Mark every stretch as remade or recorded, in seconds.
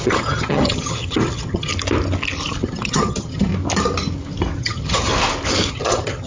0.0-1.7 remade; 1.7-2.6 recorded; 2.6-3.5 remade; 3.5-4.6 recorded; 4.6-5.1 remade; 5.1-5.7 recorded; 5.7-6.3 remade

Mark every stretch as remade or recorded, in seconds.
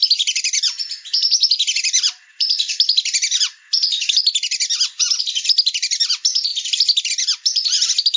0.0-1.8 recorded; 1.8-4.2 remade; 4.2-5.2 recorded; 5.2-8.2 remade